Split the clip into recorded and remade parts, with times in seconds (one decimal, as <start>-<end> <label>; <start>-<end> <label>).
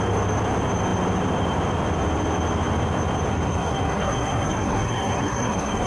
0.0-3.3 recorded; 3.3-5.9 remade